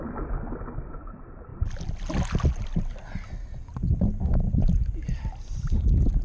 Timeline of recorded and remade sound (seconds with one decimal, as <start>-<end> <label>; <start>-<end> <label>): 0.0-6.2 recorded